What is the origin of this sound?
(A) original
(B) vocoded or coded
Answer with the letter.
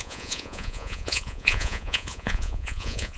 B